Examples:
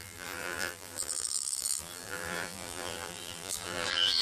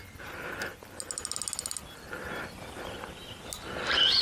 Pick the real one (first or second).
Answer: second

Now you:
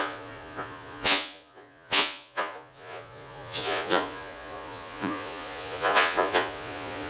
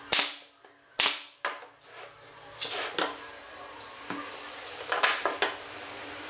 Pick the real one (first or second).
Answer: second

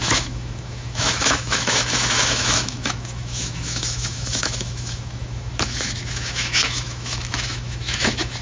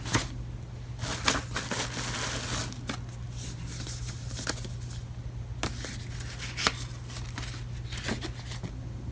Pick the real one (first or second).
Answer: second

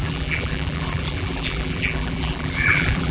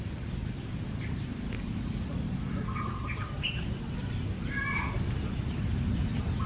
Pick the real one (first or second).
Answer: second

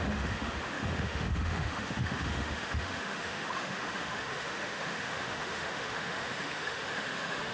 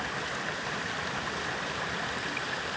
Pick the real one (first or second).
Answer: second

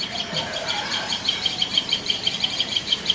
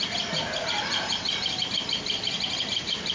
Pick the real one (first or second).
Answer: second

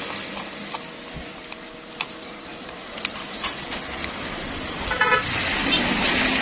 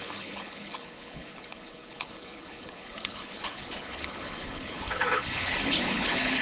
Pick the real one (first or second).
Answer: first